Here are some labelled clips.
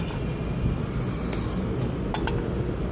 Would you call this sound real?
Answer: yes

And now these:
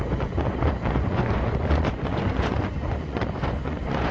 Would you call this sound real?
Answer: no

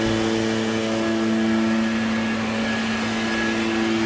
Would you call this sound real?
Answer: yes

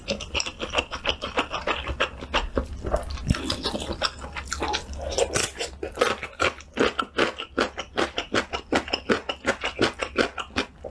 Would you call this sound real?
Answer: yes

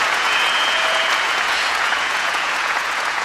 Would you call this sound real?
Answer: no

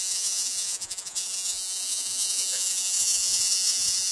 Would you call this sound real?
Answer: no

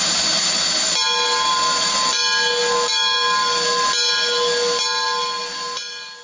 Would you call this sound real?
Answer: yes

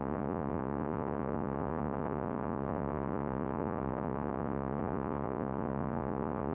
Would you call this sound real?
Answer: no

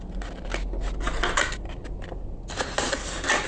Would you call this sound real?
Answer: yes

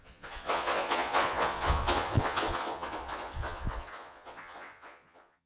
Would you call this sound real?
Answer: no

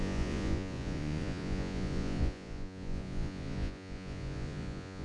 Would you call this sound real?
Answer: no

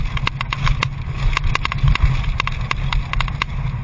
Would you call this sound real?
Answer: yes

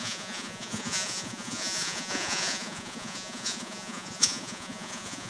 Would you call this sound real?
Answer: no